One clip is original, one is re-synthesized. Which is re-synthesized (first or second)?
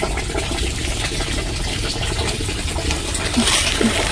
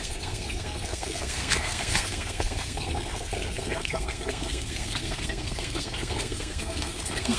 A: second